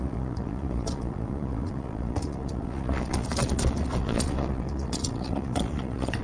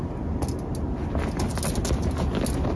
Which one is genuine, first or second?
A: second